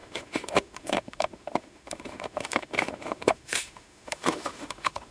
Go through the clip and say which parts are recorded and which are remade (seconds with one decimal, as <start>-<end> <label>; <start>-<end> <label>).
0.0-5.1 remade